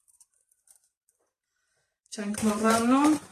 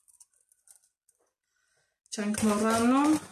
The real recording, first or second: second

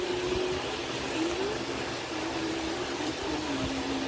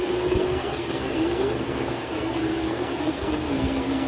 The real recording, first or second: first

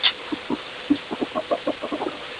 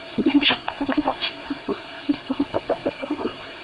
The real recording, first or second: first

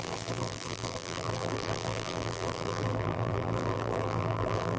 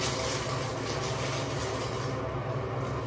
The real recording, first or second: second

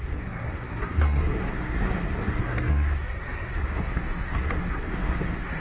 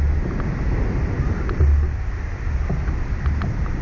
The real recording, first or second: second